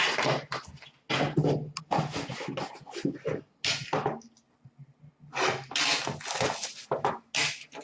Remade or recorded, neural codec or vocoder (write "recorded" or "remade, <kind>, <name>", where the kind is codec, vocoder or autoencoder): recorded